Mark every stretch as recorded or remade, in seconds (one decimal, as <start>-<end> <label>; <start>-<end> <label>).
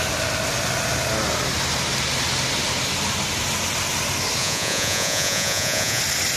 0.0-4.4 recorded; 4.4-6.0 remade; 6.0-6.4 recorded